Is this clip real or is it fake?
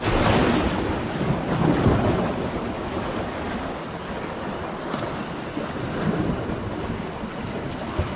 real